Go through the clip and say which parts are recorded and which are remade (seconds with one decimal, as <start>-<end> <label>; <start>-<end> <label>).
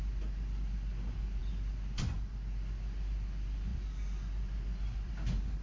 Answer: 0.0-3.7 recorded; 3.7-5.1 remade; 5.1-5.6 recorded